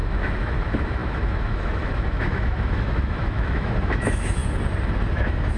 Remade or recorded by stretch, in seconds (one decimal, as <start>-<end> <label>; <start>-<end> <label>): 0.0-4.4 remade; 4.4-5.1 recorded; 5.1-5.6 remade